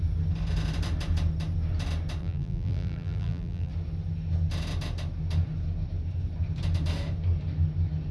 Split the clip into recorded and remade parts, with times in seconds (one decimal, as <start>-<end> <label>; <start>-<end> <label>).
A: 0.0-2.2 recorded; 2.2-3.7 remade; 3.7-8.1 recorded